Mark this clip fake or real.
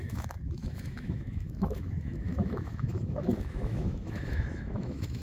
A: fake